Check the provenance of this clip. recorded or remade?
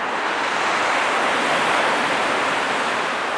recorded